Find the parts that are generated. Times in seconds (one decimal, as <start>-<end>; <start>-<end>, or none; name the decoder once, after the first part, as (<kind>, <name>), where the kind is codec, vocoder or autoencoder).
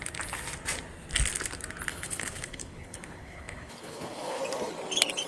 1.9-4.4 (codec, HILCodec)